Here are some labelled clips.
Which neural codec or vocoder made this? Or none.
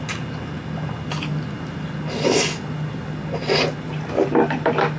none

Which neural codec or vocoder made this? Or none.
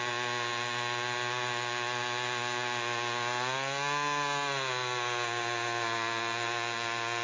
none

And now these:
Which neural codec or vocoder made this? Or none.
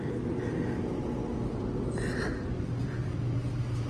none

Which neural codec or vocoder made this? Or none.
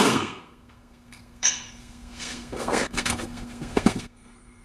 codec, SNAC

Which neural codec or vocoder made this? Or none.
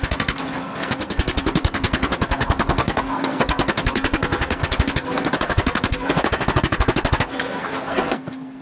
codec, SNAC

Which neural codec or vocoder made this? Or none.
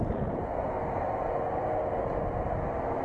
none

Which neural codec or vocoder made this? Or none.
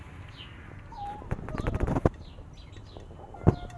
none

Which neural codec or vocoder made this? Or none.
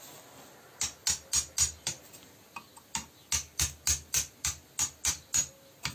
none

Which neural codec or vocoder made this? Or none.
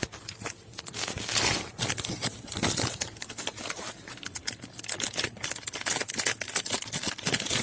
none